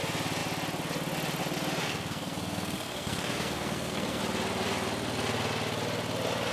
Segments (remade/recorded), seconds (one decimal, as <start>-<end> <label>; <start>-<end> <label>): 0.0-1.8 recorded; 1.8-4.2 remade; 4.2-6.5 recorded